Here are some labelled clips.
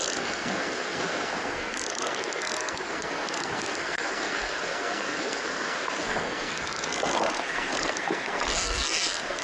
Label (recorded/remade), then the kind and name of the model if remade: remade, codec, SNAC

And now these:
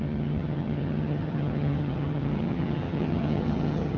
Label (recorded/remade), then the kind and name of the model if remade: remade, vocoder, HiFi-GAN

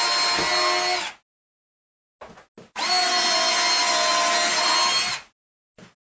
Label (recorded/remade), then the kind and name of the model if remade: recorded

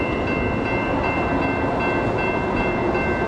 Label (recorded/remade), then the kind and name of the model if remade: recorded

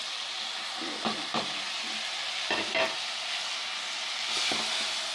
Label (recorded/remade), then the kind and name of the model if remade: recorded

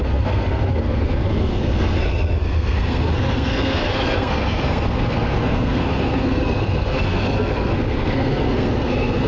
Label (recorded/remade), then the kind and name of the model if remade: remade, codec, SNAC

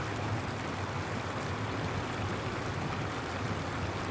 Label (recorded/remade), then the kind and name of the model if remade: recorded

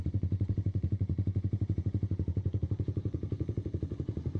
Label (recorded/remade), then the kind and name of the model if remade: remade, vocoder, Vocos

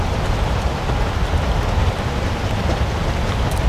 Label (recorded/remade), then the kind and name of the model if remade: recorded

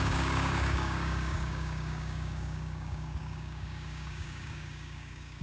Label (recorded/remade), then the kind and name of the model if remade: remade, codec, DAC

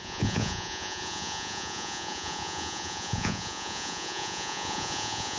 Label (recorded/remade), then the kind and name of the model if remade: remade, vocoder, Vocos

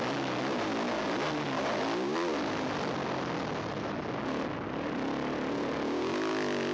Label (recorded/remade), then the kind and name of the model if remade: recorded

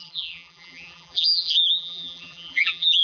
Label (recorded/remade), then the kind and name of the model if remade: remade, vocoder, BigVGAN v2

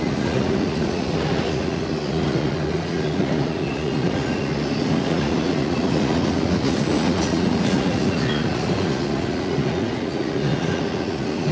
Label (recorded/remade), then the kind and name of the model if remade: remade, vocoder, Vocos